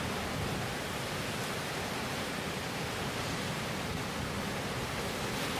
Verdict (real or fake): real